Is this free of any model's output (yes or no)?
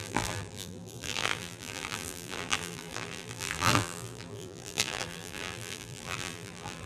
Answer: no